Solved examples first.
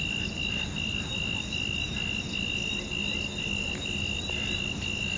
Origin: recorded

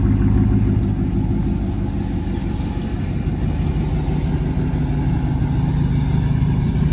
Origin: recorded